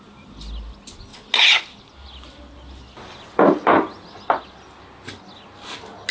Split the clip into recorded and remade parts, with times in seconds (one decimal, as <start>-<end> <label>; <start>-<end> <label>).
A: 0.0-6.1 recorded